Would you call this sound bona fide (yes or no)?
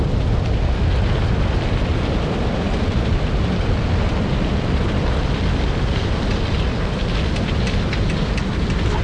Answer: yes